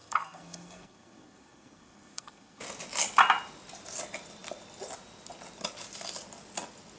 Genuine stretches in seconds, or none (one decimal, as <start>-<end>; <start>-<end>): 2.6-7.0

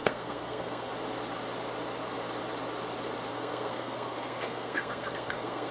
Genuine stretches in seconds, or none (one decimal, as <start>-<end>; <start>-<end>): 0.9-3.3